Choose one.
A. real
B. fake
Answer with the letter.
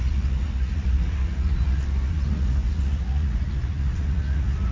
B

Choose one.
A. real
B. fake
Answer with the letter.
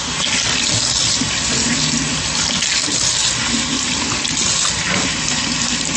A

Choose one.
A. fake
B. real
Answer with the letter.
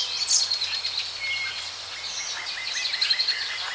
B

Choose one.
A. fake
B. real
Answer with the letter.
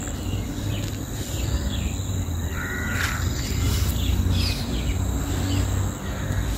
B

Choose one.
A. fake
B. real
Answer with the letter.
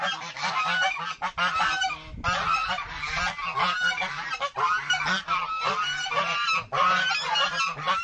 B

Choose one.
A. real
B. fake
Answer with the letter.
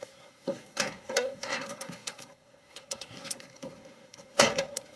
B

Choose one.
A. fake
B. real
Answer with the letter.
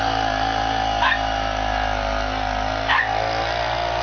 B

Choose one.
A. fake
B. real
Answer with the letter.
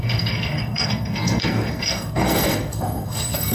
A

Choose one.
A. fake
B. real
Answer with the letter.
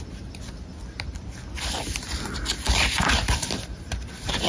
B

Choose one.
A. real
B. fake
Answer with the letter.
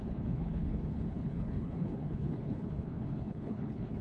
B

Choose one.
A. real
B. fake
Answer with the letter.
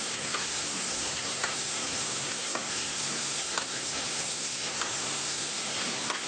B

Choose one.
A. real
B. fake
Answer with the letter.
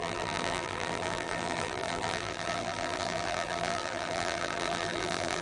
B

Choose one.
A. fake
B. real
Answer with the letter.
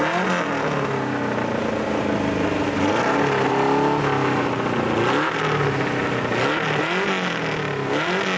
B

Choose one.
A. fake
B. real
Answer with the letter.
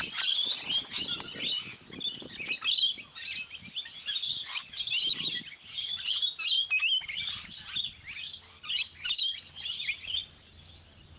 B